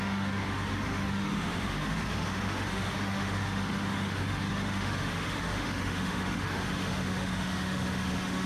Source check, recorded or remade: remade